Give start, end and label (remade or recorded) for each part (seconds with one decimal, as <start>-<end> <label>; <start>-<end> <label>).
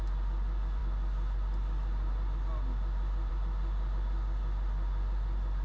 0.0-5.6 recorded